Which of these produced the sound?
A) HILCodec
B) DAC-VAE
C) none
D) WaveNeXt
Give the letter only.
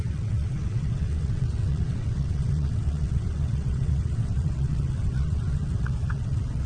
D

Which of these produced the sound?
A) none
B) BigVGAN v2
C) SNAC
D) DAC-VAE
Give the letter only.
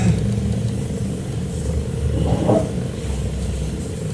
A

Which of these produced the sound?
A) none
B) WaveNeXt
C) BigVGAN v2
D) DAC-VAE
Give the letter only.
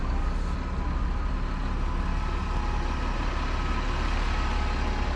A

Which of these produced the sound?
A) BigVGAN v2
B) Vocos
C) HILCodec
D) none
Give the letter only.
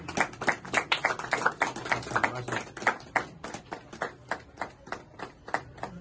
D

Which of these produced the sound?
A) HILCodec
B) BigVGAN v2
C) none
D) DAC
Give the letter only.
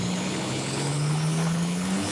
A